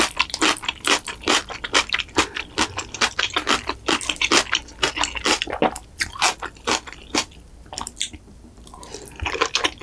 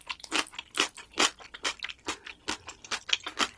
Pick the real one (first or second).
second